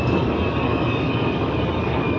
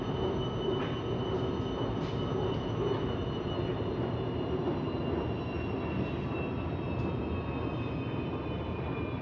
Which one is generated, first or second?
first